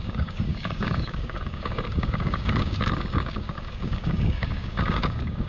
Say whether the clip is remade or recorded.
remade